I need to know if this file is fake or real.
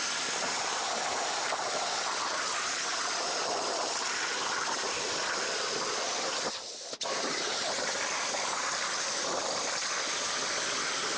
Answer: fake